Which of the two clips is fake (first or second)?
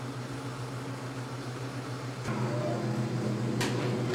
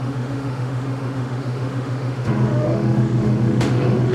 second